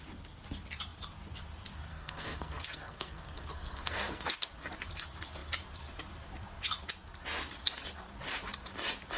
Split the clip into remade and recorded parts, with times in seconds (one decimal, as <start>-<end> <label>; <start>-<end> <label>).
0.0-1.9 recorded; 1.9-4.5 remade; 4.5-9.2 recorded